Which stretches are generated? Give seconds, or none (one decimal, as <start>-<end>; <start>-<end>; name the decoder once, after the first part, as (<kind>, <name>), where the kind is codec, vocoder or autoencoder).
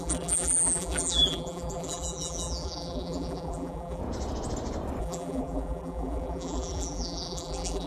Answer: 0.0-4.0 (vocoder, BigVGAN v2); 5.0-7.9